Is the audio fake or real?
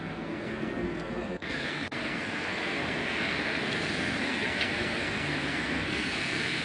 fake